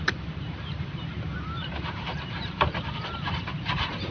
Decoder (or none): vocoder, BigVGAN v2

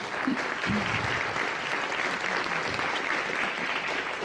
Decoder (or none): none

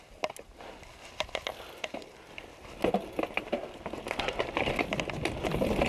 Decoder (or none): none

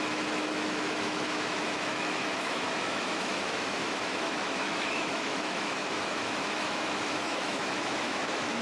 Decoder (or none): autoencoder, DAC-VAE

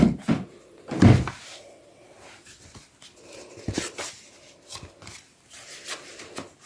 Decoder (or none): none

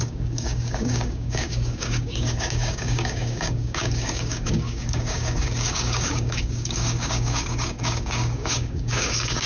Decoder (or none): codec, DAC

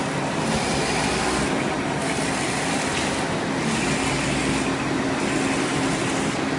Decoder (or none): none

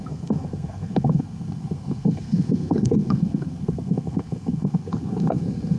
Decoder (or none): codec, SNAC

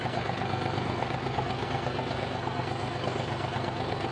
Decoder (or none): codec, SNAC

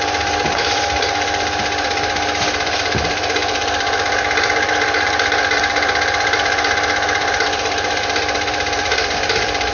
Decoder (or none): vocoder, BigVGAN v2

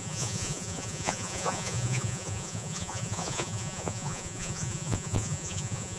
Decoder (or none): vocoder, Vocos